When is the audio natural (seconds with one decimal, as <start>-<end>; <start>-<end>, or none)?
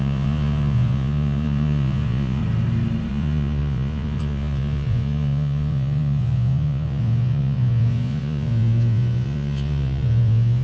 2.4-3.1